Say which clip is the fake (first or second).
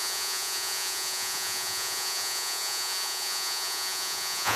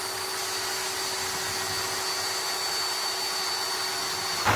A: first